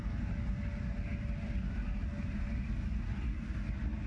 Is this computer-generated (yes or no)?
no